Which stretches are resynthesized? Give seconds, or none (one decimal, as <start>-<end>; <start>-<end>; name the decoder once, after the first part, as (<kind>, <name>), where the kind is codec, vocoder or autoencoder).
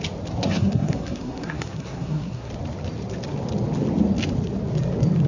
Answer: 0.4-2.5 (codec, SNAC)